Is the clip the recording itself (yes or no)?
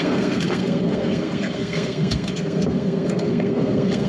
no